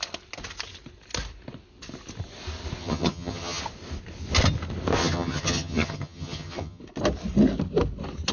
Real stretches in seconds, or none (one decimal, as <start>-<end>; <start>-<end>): 0.0-2.8; 3.6-5.0; 6.8-8.3

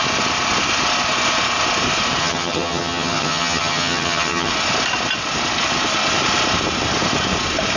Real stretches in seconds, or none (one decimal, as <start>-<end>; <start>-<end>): 0.0-2.2; 4.5-7.8

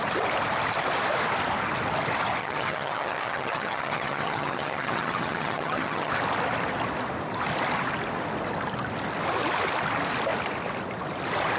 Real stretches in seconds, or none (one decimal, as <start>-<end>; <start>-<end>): 0.0-2.4; 6.1-11.6

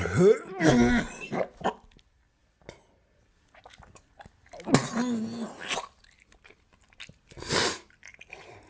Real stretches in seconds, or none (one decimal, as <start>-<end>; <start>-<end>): 0.0-8.7

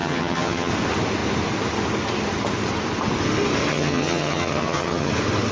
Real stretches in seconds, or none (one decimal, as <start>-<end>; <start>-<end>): 0.7-3.7; 5.1-5.5